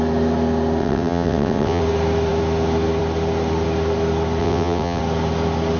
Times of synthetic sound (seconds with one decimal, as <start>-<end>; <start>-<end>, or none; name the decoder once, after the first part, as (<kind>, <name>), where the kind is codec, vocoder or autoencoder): 0.8-1.8 (vocoder, WaveNeXt); 4.4-5.0